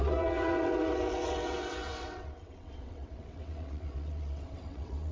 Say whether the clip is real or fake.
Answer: fake